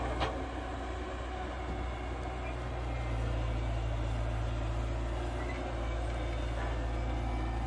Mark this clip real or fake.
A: real